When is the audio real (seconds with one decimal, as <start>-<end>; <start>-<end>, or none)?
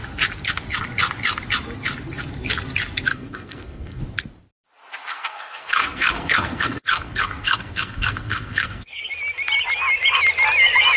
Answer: 0.0-3.1; 4.0-5.1; 9.1-11.0